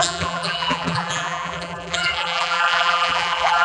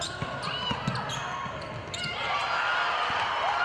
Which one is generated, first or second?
first